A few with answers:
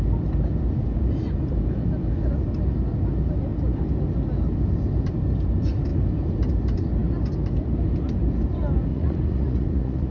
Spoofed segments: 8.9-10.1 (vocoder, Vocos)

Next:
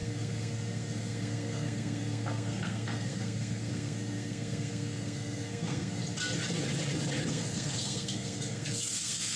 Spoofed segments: 0.0-6.0 (codec, SNAC); 7.3-9.4